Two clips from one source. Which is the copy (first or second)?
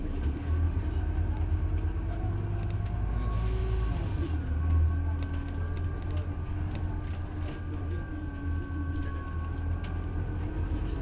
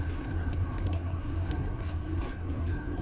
second